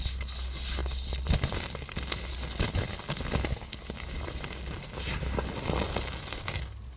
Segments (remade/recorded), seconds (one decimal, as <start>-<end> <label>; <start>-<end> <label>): 0.0-7.0 recorded

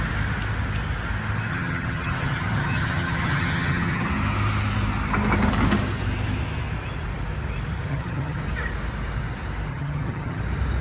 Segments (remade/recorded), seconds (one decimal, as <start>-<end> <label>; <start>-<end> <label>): 0.0-1.5 recorded; 1.5-4.1 remade; 4.1-7.9 recorded; 7.9-8.4 remade; 8.4-9.7 recorded; 9.7-10.4 remade; 10.4-10.8 recorded